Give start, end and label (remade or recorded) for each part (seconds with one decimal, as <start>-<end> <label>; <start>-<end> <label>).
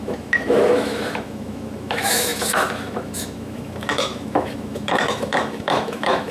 0.0-6.3 remade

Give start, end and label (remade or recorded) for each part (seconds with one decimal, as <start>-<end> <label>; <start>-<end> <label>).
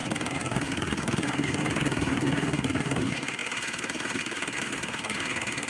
0.0-5.7 remade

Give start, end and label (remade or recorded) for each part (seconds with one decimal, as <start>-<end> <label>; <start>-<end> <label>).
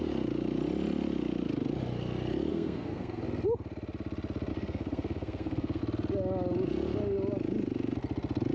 0.0-2.5 recorded; 2.5-3.2 remade; 3.2-4.5 recorded; 4.5-5.8 remade; 5.8-8.5 recorded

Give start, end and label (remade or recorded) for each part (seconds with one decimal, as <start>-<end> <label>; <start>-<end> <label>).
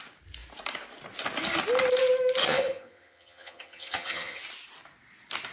0.0-2.4 recorded; 2.4-4.4 remade; 4.4-5.5 recorded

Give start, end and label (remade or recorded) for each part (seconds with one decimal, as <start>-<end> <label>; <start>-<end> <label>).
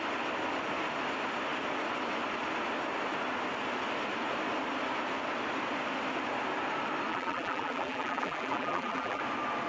0.0-7.1 recorded; 7.1-9.2 remade; 9.2-9.7 recorded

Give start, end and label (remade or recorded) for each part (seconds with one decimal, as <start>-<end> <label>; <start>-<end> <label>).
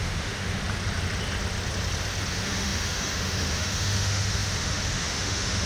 0.0-0.6 remade; 0.6-2.3 recorded; 2.3-5.7 remade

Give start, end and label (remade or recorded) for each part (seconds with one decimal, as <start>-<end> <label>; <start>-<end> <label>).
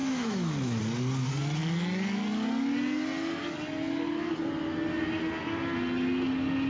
0.0-0.8 remade; 0.8-6.7 recorded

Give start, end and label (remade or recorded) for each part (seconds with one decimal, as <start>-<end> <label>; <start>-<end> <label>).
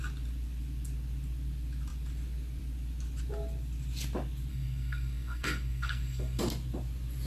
0.0-4.5 recorded; 4.5-6.4 remade; 6.4-7.3 recorded